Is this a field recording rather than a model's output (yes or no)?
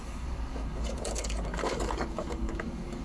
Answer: no